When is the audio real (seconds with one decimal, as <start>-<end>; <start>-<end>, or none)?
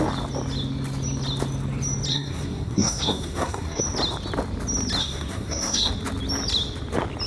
0.0-2.1; 3.8-5.0; 5.9-7.3